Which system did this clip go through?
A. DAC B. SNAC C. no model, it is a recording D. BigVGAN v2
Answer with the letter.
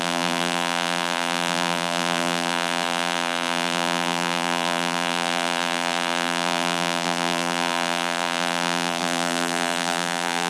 D